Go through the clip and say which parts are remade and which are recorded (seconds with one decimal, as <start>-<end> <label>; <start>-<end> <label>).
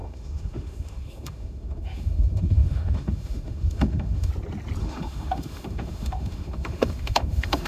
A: 0.0-4.3 remade; 4.3-4.8 recorded; 4.8-7.7 remade